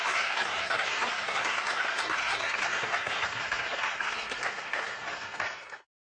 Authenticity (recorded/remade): remade